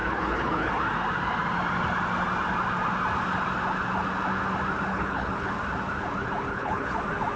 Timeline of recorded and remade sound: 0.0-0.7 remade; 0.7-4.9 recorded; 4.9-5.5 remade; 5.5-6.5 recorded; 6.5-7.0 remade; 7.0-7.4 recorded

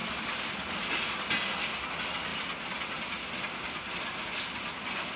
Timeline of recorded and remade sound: 0.0-5.2 recorded

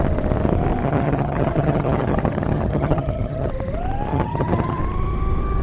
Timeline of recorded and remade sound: 0.0-0.8 recorded; 0.8-3.5 remade; 3.5-4.1 recorded; 4.1-4.8 remade; 4.8-5.6 recorded

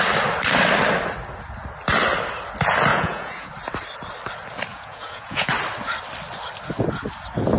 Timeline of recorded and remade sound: 0.0-2.9 recorded; 2.9-3.5 remade; 3.5-4.7 recorded; 4.7-5.5 remade; 5.5-7.6 recorded